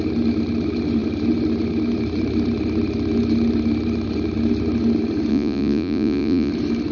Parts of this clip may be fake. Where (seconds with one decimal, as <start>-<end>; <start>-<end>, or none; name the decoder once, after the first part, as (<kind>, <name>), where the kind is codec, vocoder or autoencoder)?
5.3-6.5 (vocoder, Vocos)